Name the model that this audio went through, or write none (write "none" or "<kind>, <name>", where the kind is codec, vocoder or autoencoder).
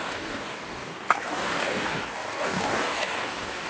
codec, DAC